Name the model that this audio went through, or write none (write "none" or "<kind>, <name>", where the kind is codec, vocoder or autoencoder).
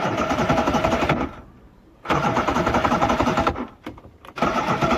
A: vocoder, BigVGAN v2